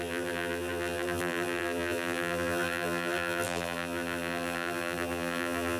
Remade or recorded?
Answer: remade